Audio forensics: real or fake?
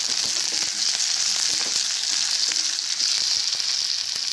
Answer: real